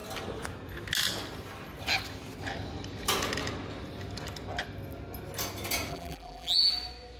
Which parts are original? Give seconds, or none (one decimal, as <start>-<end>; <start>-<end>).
0.0-5.9; 6.7-7.2